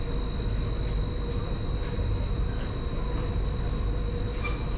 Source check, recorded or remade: recorded